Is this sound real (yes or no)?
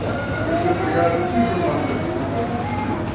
yes